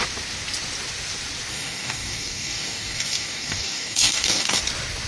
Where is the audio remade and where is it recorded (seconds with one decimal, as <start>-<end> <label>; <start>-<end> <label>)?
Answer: 0.0-1.5 recorded; 1.5-4.6 remade; 4.6-5.1 recorded